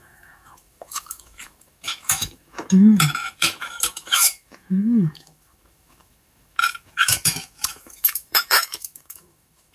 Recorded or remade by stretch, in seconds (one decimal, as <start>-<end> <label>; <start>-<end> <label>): 0.0-9.7 remade